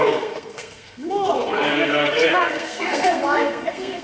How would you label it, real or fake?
fake